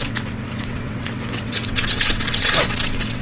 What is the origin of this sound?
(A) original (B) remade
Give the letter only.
B